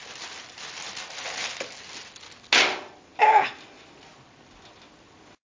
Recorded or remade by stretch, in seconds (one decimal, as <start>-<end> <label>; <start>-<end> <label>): 0.0-5.6 recorded